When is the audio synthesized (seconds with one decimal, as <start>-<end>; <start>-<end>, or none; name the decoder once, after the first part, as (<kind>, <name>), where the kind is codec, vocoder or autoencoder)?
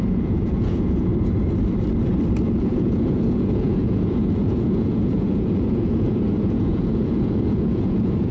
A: 0.0-1.1 (vocoder, Vocos); 2.6-8.3